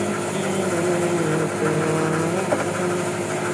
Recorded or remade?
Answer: recorded